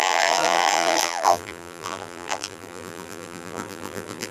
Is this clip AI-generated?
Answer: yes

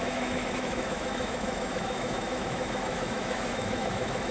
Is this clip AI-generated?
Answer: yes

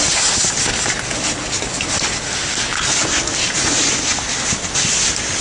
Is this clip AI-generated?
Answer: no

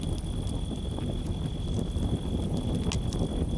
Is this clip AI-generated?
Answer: no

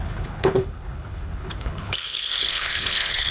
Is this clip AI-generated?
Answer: yes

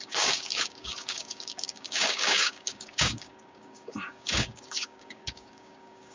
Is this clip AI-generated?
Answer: yes